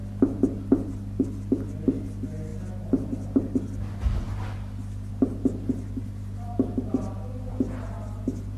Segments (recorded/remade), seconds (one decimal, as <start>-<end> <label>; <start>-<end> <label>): 0.0-8.6 recorded